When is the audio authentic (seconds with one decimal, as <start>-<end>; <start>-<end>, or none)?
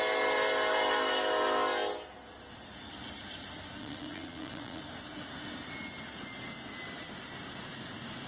0.0-3.8; 4.8-8.3